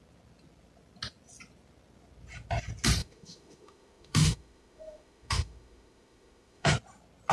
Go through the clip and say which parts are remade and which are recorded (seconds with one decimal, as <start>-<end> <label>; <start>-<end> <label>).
0.0-3.0 recorded; 3.0-6.7 remade; 6.7-7.3 recorded

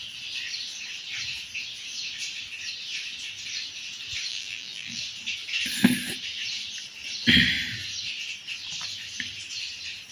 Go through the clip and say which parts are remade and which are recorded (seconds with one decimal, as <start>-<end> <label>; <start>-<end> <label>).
0.0-4.3 recorded; 4.3-5.0 remade; 5.0-10.1 recorded

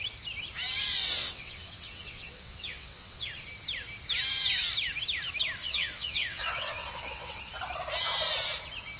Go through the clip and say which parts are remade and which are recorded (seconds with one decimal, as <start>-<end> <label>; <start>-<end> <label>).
0.0-0.9 recorded; 0.9-3.3 remade; 3.3-5.6 recorded; 5.6-7.4 remade; 7.4-9.0 recorded

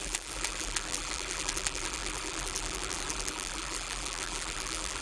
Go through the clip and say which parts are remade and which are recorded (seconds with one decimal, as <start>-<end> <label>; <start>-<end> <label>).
0.0-5.0 remade